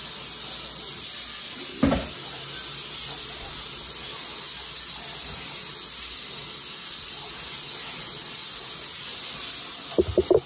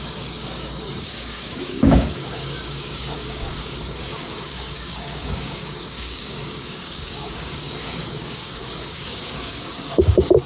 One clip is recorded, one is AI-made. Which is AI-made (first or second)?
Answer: second